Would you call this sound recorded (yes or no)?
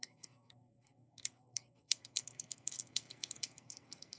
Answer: no